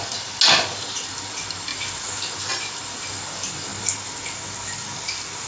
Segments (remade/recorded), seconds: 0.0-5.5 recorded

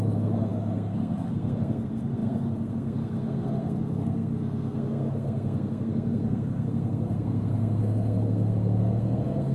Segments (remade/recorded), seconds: 0.0-9.5 remade

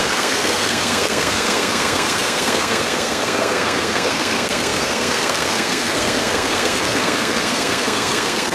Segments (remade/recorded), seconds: 0.0-8.5 remade

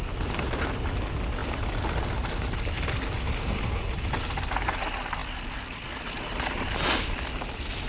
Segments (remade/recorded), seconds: 0.0-7.9 recorded

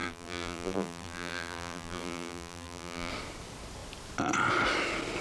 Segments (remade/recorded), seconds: 0.0-3.1 remade; 3.1-5.2 recorded